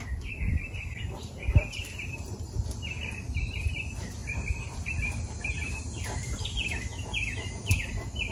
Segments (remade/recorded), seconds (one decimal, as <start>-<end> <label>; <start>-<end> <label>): 0.0-6.9 remade; 6.9-7.8 recorded; 7.8-8.3 remade